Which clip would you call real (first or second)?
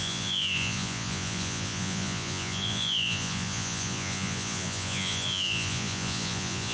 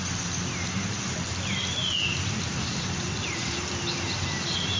second